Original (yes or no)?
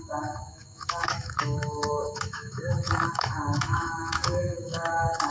no